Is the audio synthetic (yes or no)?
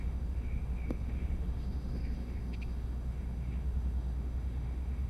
yes